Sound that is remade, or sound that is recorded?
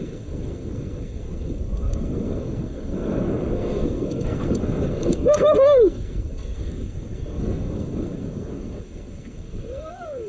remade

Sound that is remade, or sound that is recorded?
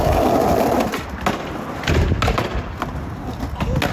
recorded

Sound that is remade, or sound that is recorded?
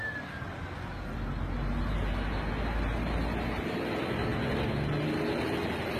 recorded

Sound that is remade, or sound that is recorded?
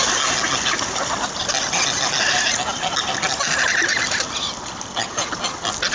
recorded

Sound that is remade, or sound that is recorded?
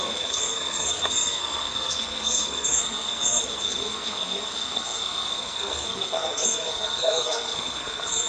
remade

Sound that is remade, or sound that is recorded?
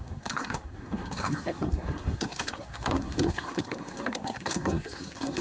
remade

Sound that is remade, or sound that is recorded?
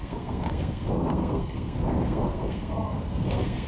remade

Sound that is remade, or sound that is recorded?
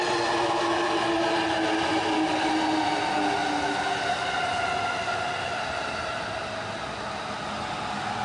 recorded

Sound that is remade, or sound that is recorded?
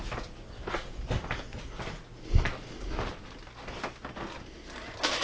recorded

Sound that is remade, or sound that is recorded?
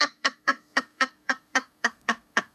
remade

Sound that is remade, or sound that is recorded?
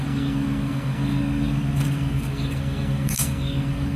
remade